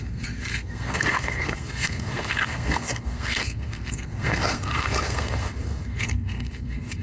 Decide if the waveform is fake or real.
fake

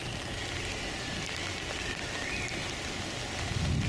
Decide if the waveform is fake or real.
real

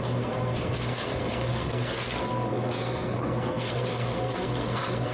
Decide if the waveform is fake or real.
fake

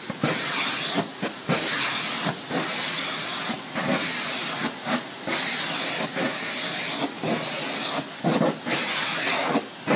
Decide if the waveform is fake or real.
real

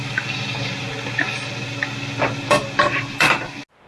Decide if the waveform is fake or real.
real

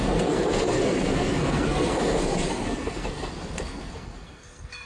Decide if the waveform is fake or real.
fake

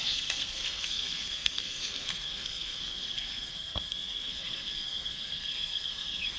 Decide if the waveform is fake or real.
fake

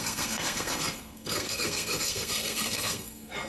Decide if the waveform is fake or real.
fake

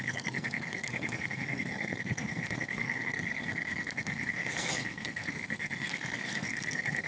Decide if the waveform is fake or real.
fake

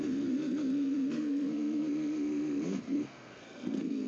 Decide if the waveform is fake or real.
fake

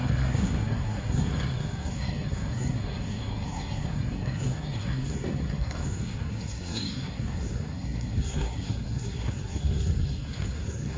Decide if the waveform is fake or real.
fake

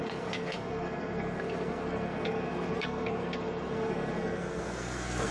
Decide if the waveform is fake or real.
fake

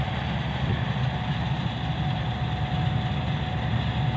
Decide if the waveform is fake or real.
real